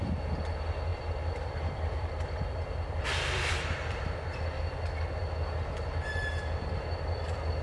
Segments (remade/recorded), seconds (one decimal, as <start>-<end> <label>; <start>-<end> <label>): 0.0-0.9 recorded; 0.9-3.5 remade; 3.5-7.6 recorded